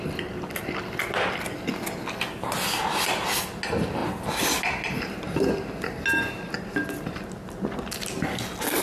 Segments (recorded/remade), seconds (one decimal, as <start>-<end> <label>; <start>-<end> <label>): 0.0-8.8 recorded

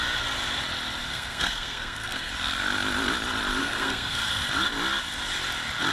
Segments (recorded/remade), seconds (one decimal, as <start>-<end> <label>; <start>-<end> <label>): 0.0-1.0 recorded; 1.0-2.3 remade; 2.3-3.6 recorded; 3.6-4.3 remade; 4.3-5.9 recorded

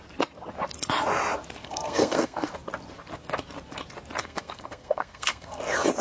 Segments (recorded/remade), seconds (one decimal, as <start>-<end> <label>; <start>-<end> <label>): 0.0-1.6 recorded; 1.6-2.5 remade; 2.5-4.2 recorded; 4.2-5.6 remade; 5.6-6.0 recorded